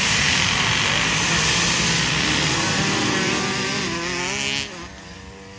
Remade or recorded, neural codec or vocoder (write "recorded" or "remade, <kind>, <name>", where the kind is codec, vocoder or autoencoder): recorded